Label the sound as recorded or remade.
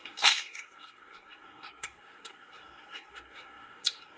remade